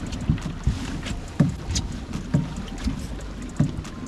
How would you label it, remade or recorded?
recorded